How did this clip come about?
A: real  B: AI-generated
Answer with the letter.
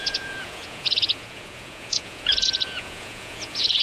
B